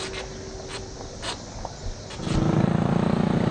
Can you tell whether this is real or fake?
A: real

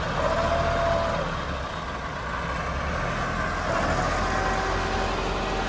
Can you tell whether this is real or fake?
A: real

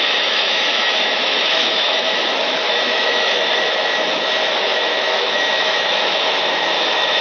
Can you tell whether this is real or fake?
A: fake